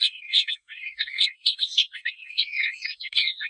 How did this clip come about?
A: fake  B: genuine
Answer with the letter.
A